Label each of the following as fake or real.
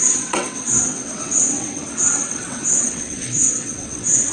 fake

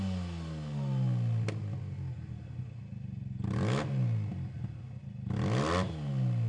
real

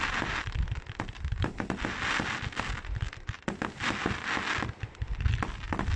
real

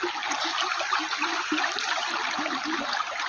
real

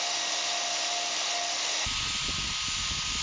real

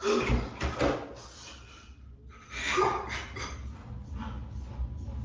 real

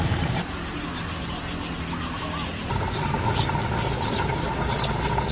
real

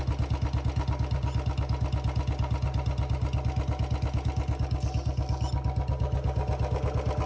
real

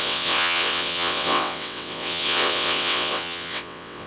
fake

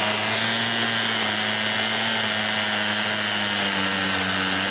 real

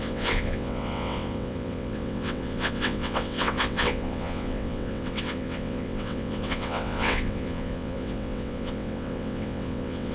fake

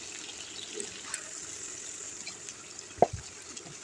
real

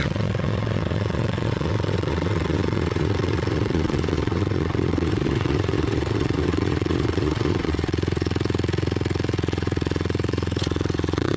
fake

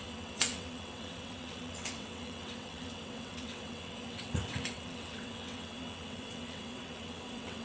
fake